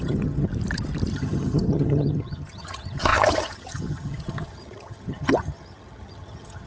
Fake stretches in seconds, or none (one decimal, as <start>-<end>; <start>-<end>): 0.0-0.5; 1.1-6.7